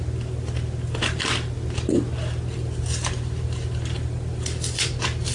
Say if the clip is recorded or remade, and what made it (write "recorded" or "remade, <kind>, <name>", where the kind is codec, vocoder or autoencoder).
recorded